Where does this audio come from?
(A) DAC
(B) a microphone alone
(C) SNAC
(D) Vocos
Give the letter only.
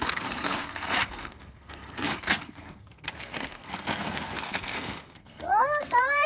C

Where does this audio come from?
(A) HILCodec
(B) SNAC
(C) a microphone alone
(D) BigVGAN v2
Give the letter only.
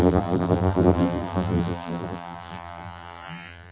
D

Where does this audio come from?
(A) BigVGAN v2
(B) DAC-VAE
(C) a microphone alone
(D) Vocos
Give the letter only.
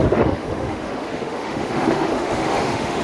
B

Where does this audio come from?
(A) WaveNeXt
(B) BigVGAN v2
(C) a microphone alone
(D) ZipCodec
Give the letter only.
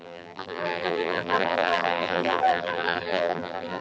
B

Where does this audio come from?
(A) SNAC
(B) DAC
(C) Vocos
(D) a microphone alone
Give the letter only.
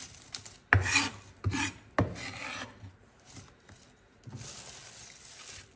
D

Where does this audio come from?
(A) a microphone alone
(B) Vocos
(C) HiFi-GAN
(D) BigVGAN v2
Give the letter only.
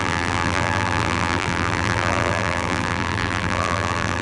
D